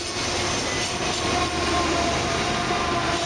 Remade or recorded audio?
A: recorded